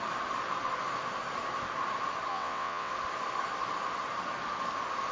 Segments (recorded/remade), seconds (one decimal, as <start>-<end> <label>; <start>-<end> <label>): 0.0-2.3 recorded; 2.3-2.9 remade; 2.9-5.1 recorded